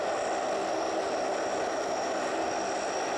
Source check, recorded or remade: recorded